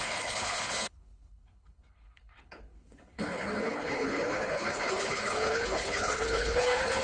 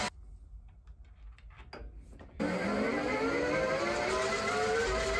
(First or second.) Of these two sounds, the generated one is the first